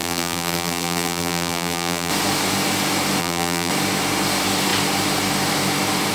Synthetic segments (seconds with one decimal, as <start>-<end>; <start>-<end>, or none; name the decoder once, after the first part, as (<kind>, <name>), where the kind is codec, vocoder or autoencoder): 0.0-2.1 (vocoder, BigVGAN v2); 3.2-3.7